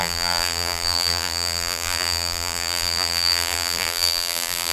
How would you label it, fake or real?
fake